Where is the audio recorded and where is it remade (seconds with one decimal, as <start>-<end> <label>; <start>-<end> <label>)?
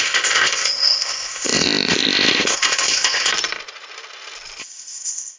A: 0.0-3.3 remade; 3.3-4.6 recorded; 4.6-5.4 remade